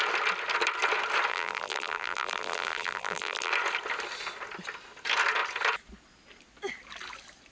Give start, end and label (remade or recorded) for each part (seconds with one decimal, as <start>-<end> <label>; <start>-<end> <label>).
0.0-1.3 recorded; 1.3-3.5 remade; 3.5-7.5 recorded